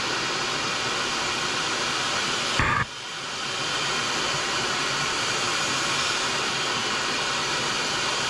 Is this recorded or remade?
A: recorded